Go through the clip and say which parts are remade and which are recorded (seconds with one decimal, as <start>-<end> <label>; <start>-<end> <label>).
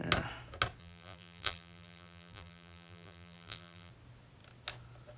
0.0-0.8 recorded; 0.8-3.9 remade; 3.9-5.2 recorded